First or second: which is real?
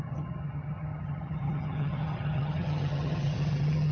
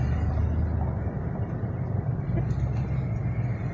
second